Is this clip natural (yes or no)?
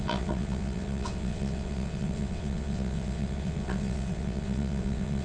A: no